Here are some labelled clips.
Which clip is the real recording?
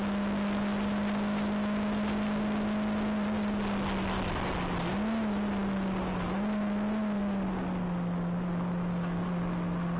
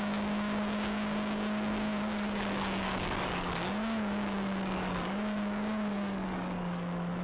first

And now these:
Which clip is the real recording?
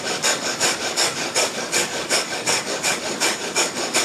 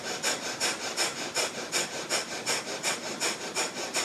second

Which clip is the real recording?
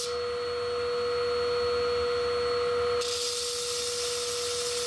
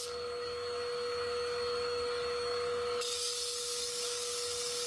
first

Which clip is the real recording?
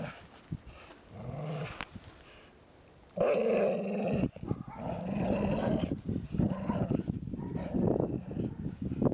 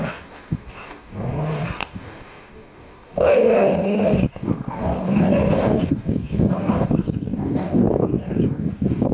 first